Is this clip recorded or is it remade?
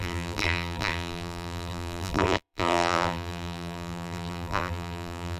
remade